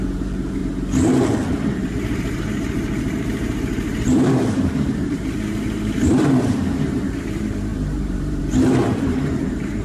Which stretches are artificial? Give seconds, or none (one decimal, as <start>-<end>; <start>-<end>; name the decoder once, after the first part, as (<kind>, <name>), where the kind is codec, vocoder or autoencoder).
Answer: 0.0-0.6 (vocoder, BigVGAN v2); 1.5-9.8